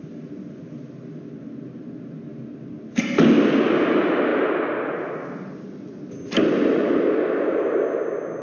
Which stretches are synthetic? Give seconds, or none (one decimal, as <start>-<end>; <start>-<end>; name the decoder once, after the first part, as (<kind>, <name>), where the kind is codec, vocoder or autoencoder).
none